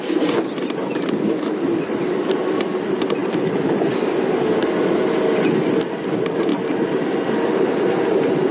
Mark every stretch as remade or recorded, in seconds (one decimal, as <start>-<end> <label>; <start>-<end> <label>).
0.0-3.2 recorded; 3.2-3.8 remade; 3.8-6.5 recorded; 6.5-7.6 remade; 7.6-8.5 recorded